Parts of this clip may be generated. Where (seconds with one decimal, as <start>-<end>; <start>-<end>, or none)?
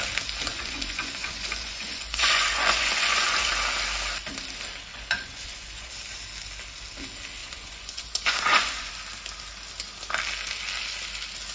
0.5-3.5; 4.9-5.9; 7.4-8.9